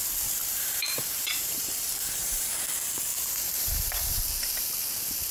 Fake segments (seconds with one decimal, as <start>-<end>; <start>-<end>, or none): 0.4-2.5; 3.1-4.2